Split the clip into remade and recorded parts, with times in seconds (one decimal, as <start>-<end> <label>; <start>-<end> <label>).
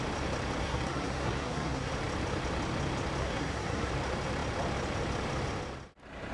0.0-0.6 recorded; 0.6-1.9 remade; 1.9-3.2 recorded; 3.2-3.9 remade; 3.9-6.3 recorded